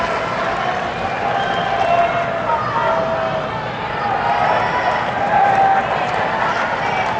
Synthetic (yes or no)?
no